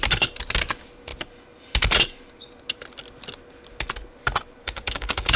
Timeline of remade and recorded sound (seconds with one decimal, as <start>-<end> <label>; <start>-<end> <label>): 0.0-4.6 recorded; 4.6-5.4 remade